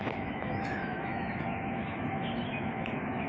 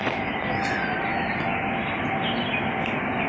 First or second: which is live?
second